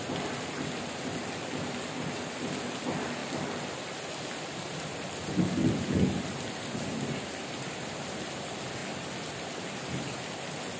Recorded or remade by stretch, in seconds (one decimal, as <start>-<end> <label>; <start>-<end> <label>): 0.0-10.8 recorded

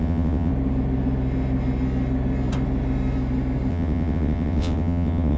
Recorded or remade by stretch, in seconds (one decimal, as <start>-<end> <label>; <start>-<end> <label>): 0.0-0.5 remade; 0.5-3.7 recorded; 3.7-5.4 remade

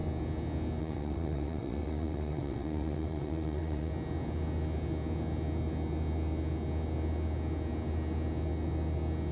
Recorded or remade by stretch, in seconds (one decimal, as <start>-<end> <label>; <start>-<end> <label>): 0.0-0.8 recorded; 0.8-3.9 remade; 3.9-9.3 recorded